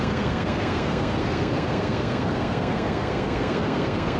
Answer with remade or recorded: remade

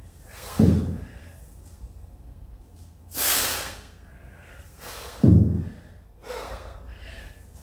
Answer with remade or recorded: remade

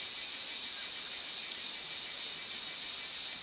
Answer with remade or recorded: recorded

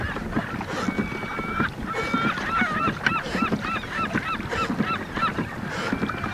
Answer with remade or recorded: recorded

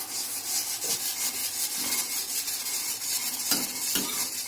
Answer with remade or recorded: recorded